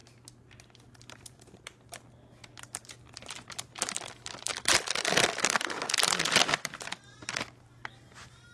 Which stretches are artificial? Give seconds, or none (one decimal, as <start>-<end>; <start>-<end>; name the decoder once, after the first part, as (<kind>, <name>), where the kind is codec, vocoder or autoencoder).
none